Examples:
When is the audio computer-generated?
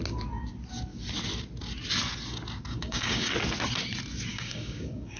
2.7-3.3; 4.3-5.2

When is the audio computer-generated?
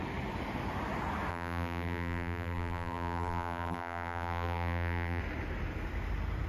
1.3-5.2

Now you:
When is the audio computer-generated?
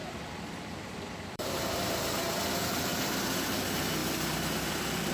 0.0-5.1